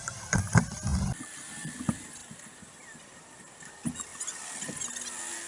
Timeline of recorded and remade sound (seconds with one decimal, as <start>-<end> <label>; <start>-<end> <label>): 0.0-0.9 recorded; 0.9-1.8 remade; 1.8-2.2 recorded; 2.2-2.8 remade; 2.8-5.5 recorded